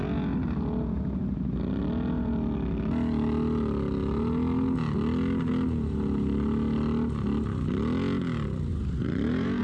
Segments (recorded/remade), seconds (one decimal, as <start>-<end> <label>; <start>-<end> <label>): 0.0-8.7 recorded; 8.7-9.6 remade